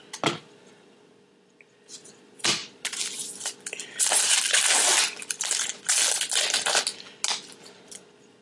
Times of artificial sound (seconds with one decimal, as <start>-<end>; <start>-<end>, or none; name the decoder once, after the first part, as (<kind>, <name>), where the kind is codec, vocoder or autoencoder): none